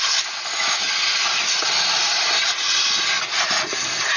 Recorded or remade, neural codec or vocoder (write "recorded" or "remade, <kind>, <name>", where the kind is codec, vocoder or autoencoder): recorded